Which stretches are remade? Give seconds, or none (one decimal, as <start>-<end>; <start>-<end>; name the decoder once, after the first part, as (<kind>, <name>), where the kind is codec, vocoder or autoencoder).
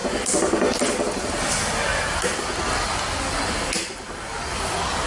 none